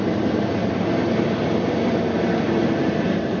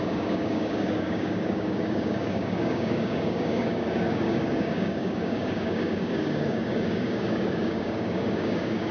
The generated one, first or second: second